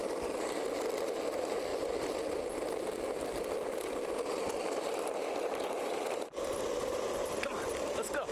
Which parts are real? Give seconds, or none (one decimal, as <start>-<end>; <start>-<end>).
0.0-8.3